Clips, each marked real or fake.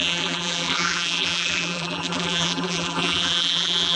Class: fake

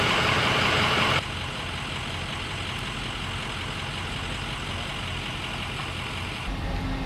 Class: real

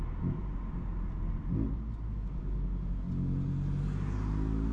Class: real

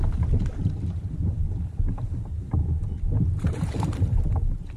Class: fake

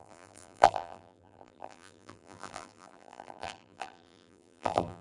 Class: fake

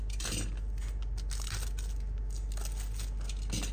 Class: real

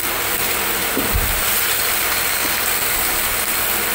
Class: fake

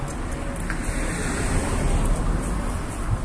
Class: real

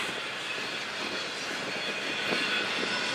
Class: real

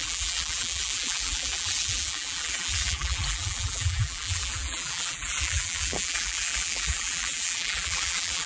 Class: fake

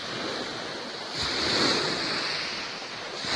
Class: real